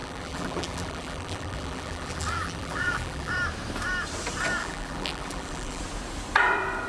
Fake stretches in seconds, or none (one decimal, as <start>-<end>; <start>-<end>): 0.0-3.3; 4.6-5.8